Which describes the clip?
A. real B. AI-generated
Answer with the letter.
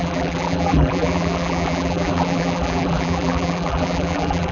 B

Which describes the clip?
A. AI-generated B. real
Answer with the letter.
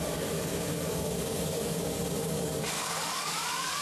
A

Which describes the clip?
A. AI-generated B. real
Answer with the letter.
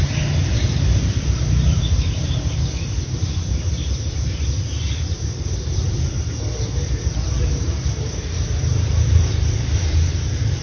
A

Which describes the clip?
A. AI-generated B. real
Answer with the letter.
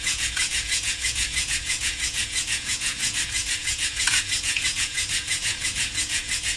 A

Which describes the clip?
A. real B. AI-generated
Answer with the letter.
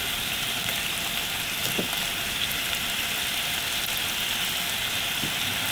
A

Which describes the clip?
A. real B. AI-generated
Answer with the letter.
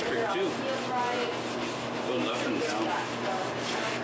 A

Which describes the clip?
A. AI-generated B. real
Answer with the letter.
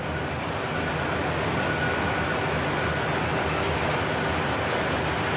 B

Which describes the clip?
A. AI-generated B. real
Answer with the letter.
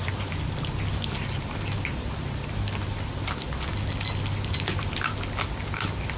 B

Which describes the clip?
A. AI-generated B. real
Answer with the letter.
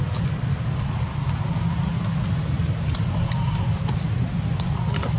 B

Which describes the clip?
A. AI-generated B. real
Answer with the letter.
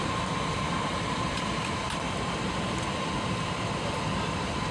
B